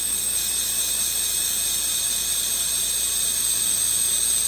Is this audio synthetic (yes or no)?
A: no